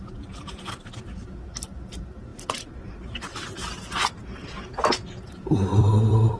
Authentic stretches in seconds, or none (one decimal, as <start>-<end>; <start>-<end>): 4.0-5.3